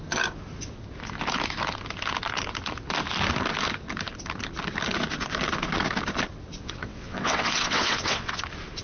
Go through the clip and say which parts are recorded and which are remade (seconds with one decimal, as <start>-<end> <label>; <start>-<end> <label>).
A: 0.0-6.6 recorded; 6.6-8.4 remade; 8.4-8.8 recorded